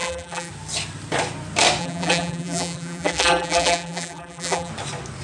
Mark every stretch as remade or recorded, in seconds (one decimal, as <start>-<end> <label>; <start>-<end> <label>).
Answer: 0.0-0.5 remade; 0.5-1.8 recorded; 1.8-4.7 remade; 4.7-5.2 recorded

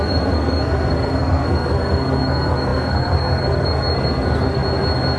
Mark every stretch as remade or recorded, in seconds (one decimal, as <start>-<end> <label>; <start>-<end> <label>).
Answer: 0.0-4.6 remade; 4.6-5.2 recorded

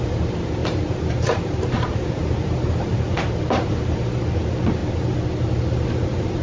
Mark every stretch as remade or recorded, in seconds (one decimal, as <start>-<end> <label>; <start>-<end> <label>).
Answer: 0.0-4.8 remade; 4.8-5.7 recorded; 5.7-6.4 remade

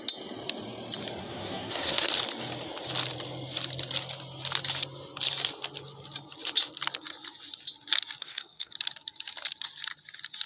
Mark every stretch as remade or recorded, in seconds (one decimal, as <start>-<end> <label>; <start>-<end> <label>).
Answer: 0.0-1.2 recorded; 1.2-2.1 remade; 2.1-8.2 recorded; 8.2-8.7 remade; 8.7-10.5 recorded

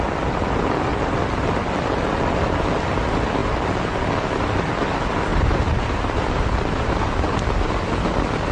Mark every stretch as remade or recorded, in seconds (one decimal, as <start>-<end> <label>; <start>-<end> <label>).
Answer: 0.0-5.3 recorded; 5.3-7.4 remade; 7.4-8.5 recorded

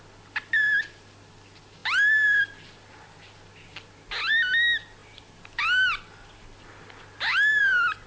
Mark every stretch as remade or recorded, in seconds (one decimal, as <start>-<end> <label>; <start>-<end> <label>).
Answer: 0.0-8.1 recorded

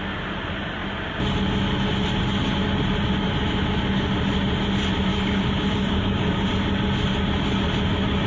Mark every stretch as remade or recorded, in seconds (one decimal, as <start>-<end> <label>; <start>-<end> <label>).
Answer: 0.0-5.1 recorded; 5.1-6.5 remade; 6.5-8.3 recorded